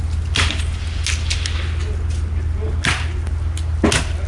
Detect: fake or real real